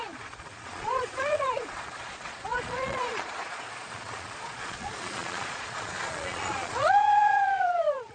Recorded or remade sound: remade